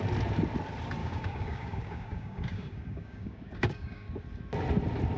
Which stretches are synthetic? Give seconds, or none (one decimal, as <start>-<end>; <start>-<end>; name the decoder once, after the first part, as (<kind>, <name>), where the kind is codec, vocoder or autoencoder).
1.0-4.1 (codec, DAC)